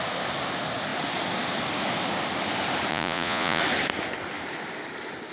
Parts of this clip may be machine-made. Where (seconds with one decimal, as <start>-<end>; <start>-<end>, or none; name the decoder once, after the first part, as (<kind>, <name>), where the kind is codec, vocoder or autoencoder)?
2.9-3.6 (vocoder, Vocos)